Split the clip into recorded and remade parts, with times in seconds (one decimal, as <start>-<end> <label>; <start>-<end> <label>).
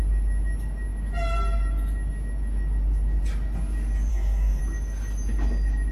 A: 0.0-4.1 recorded; 4.1-4.6 remade; 4.6-5.9 recorded